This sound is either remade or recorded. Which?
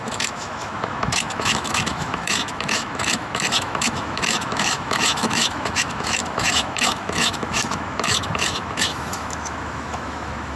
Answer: remade